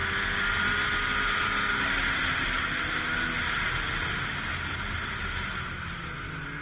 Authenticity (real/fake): real